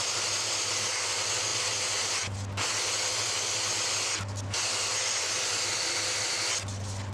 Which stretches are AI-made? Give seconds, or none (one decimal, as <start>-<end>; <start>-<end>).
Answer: none